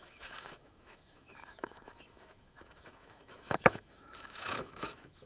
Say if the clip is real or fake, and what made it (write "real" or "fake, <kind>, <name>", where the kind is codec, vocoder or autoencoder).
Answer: fake, autoencoder, DAC-VAE